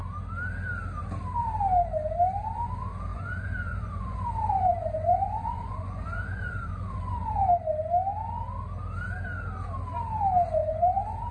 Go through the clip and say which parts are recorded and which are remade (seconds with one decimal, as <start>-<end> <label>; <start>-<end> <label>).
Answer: 0.0-3.1 recorded; 3.1-7.5 remade; 7.5-10.6 recorded; 10.6-11.3 remade